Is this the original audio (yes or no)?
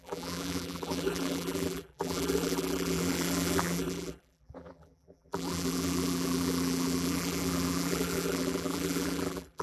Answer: no